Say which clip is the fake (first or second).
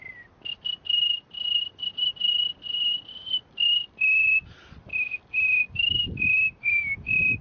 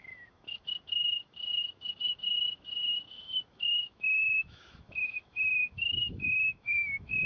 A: second